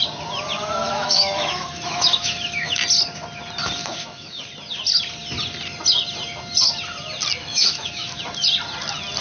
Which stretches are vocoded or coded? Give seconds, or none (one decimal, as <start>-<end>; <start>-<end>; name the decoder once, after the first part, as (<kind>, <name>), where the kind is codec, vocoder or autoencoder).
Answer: 0.8-2.8 (autoencoder, DAC-VAE); 3.8-4.4; 7.4-8.2